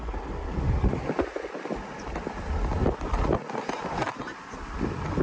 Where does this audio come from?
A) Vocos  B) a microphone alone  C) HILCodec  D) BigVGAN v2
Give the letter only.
B